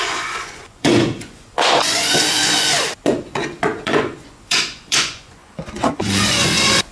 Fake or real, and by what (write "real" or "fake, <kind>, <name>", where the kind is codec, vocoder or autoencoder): fake, vocoder, Vocos